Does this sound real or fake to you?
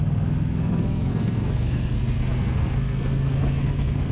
fake